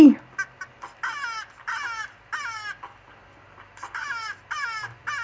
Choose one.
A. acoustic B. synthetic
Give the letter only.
A